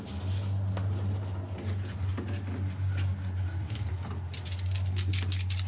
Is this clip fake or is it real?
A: real